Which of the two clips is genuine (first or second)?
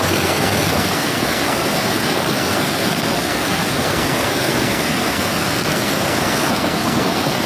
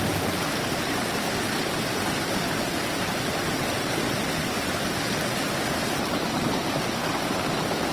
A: second